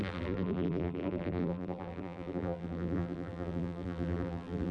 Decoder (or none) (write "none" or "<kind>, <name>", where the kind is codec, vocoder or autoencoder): vocoder, BigVGAN v2